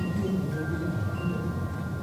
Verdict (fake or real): fake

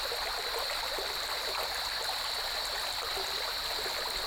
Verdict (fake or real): real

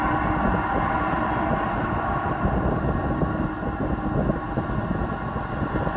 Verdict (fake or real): real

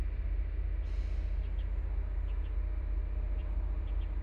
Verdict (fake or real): real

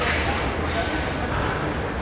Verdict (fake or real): real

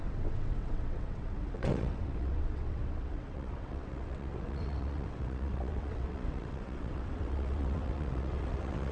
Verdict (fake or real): fake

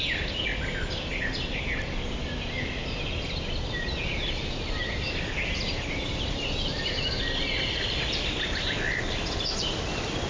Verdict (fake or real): real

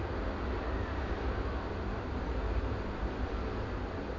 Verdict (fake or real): real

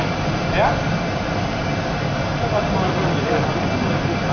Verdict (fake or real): real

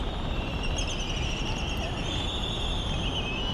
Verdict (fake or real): real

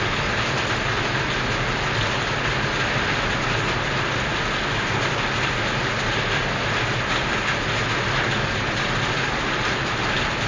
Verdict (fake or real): real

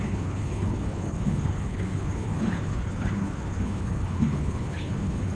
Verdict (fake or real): fake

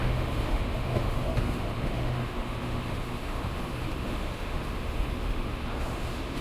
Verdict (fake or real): fake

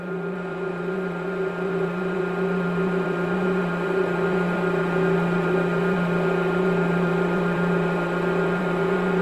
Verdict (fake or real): fake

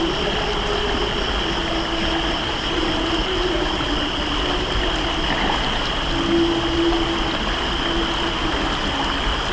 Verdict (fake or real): real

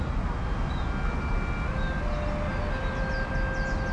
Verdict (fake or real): real